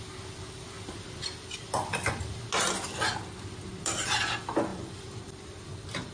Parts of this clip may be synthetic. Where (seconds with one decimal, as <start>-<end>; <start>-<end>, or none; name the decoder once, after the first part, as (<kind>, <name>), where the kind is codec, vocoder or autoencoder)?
1.2-2.2 (vocoder, BigVGAN v2); 4.7-6.1